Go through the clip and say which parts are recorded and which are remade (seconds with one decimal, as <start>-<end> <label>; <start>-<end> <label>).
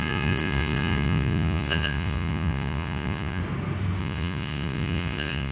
0.0-3.4 remade; 3.4-4.0 recorded; 4.0-5.5 remade